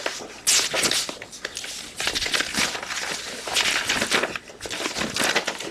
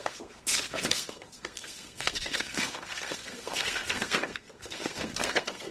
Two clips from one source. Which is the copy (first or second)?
second